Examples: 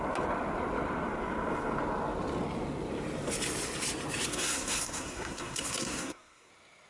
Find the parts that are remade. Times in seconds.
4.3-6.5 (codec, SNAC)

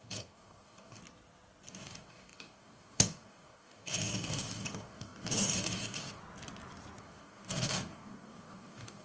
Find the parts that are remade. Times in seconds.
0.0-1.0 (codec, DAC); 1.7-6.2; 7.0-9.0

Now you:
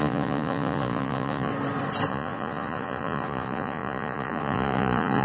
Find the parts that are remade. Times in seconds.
0.0-1.5 (vocoder, Vocos); 2.1-5.2

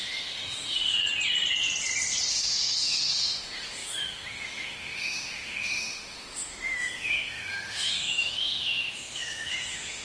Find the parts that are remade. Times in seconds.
0.0-1.0 (autoencoder, DAC-VAE); 2.3-10.0